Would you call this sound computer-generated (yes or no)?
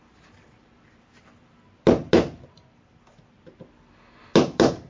no